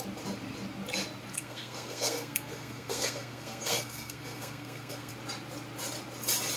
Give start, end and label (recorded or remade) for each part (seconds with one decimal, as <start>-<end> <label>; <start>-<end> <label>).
0.0-1.3 recorded; 1.3-5.1 remade; 5.1-6.6 recorded